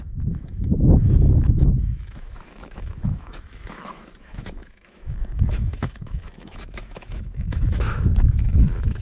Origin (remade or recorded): remade